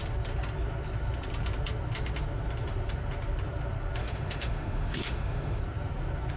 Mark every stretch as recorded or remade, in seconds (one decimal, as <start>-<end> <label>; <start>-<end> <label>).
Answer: 0.0-4.0 recorded; 4.0-5.6 remade; 5.6-6.4 recorded